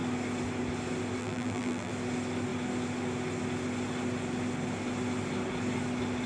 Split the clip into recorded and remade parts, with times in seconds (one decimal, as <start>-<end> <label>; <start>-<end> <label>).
0.0-1.2 recorded; 1.2-1.9 remade; 1.9-6.3 recorded